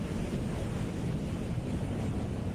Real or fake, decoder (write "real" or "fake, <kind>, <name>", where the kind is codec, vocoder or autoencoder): real